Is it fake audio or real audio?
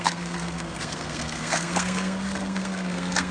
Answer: fake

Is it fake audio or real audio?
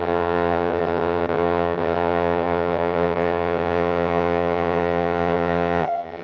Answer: fake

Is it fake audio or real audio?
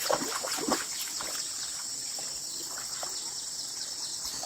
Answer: real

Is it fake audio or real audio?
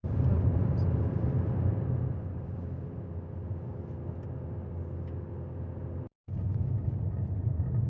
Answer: real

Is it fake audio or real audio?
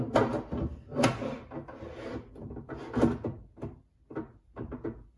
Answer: real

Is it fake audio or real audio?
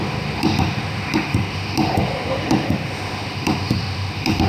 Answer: fake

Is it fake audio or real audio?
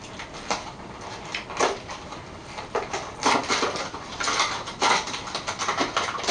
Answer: real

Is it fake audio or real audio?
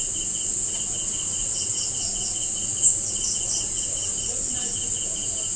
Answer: fake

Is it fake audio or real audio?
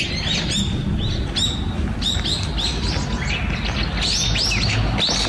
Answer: real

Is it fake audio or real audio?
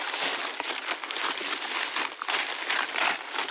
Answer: real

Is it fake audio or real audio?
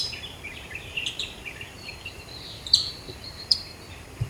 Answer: fake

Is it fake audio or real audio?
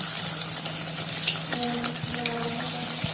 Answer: real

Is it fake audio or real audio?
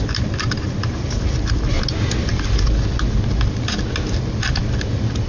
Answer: real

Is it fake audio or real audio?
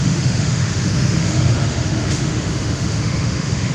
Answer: fake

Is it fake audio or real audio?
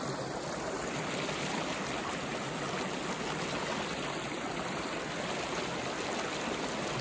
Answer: real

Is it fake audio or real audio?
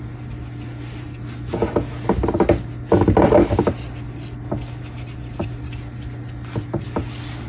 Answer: real